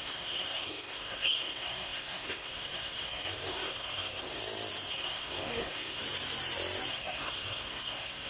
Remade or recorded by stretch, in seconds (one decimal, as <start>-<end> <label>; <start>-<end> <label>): 0.0-4.4 remade; 4.4-4.9 recorded; 4.9-6.0 remade; 6.0-6.9 recorded; 6.9-8.3 remade